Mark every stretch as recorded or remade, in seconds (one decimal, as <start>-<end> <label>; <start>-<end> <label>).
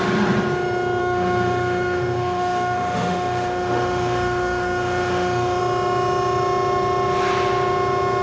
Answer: 0.0-1.0 recorded; 1.0-5.6 remade; 5.6-8.2 recorded